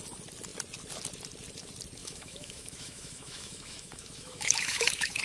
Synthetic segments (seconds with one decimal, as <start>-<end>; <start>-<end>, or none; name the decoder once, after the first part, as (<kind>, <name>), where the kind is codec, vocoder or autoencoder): 2.0-5.2 (autoencoder, DAC-VAE)